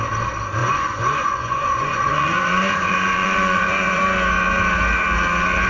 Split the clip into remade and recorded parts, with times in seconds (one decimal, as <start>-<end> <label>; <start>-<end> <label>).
0.0-0.6 recorded; 0.6-4.0 remade; 4.0-5.7 recorded